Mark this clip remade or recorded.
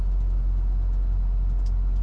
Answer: recorded